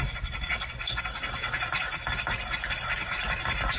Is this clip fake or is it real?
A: real